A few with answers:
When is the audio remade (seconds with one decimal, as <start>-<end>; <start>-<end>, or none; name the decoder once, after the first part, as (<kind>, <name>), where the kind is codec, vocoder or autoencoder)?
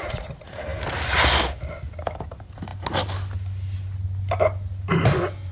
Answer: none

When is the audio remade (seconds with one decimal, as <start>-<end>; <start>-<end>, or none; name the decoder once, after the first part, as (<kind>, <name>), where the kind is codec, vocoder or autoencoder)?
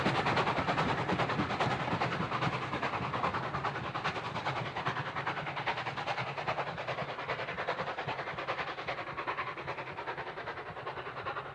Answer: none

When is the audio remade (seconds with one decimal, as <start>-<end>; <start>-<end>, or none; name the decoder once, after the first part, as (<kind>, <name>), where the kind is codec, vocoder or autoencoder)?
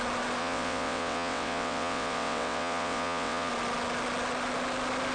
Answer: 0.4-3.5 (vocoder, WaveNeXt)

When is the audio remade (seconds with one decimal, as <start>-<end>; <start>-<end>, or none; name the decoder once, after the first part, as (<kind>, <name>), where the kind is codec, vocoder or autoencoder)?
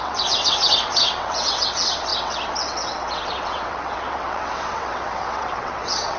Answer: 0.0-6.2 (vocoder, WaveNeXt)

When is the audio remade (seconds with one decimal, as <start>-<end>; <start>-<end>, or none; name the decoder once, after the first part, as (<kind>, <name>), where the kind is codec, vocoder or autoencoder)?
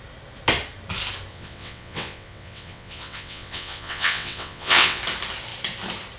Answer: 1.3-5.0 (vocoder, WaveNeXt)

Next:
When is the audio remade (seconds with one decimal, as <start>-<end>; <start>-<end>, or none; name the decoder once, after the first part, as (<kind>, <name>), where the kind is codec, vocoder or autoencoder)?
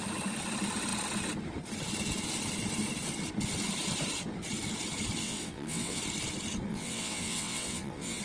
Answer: 5.2-6.0 (vocoder, WaveNeXt); 6.7-8.2